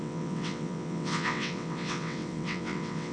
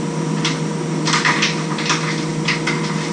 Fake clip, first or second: first